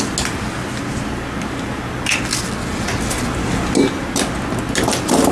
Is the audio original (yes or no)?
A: yes